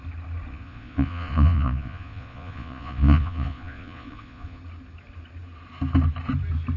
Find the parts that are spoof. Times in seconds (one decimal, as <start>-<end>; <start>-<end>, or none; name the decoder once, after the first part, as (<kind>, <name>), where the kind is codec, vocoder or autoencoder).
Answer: 0.5-4.6 (vocoder, Vocos)